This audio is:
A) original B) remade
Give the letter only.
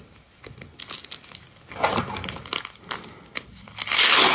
A